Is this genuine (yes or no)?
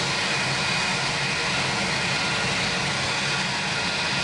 yes